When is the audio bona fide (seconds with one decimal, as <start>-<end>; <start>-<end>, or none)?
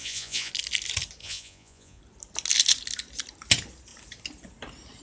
0.5-1.2; 2.0-5.0